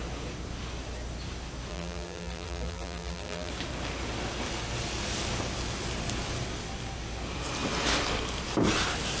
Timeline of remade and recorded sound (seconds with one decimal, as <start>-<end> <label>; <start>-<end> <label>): 0.0-1.7 recorded; 1.7-3.5 remade; 3.5-9.2 recorded